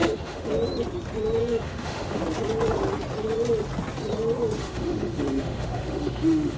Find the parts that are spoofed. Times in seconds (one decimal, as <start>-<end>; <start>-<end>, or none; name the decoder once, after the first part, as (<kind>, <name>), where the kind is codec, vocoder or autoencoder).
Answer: 0.0-0.5 (autoencoder, DAC-VAE); 1.4-2.2; 4.6-6.6